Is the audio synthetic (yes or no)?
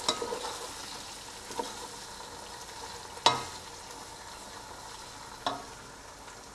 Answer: no